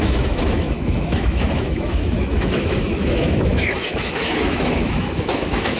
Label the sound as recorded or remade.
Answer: remade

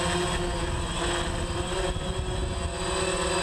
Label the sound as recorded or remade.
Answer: recorded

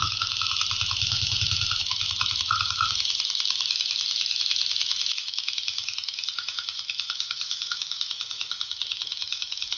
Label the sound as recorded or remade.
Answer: remade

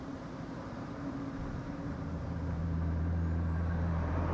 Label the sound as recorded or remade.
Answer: remade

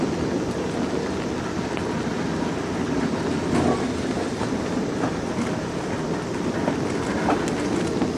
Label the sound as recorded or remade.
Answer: recorded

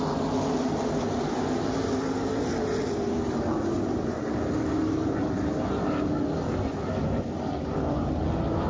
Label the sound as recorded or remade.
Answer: recorded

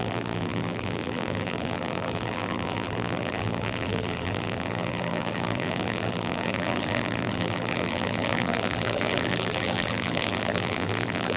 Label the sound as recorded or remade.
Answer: remade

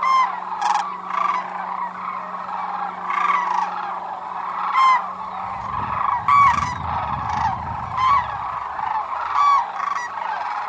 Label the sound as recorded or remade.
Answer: recorded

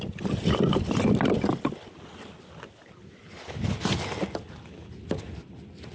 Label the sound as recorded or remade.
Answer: recorded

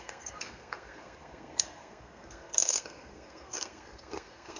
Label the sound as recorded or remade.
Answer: remade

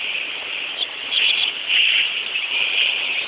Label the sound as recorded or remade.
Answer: recorded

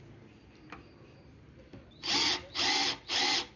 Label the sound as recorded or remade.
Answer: recorded